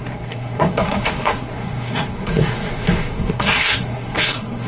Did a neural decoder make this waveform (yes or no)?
yes